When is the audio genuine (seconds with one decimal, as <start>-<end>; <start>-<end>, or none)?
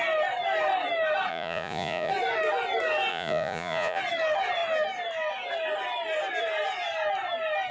0.0-1.3; 2.1-3.1; 4.0-7.7